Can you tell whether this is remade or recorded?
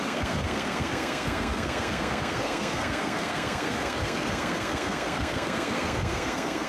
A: remade